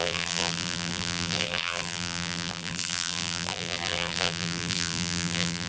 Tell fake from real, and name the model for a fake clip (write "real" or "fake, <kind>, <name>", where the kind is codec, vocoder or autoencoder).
fake, vocoder, BigVGAN v2